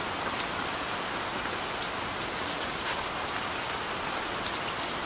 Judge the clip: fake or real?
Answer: real